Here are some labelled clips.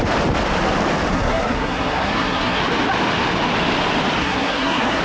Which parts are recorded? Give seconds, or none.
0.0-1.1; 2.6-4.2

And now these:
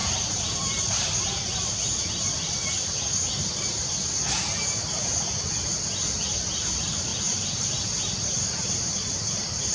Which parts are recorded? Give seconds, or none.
3.5-7.1